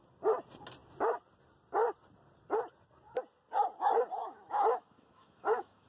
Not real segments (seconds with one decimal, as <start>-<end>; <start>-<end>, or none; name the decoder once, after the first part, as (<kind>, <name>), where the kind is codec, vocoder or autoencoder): 4.2-5.9 (autoencoder, DAC-VAE)